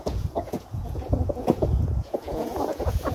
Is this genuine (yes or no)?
no